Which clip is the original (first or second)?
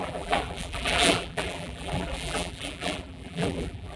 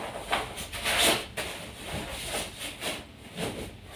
second